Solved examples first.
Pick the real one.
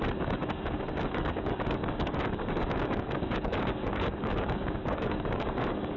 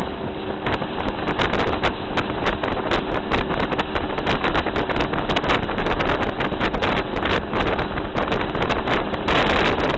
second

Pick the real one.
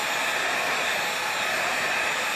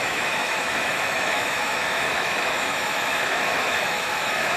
first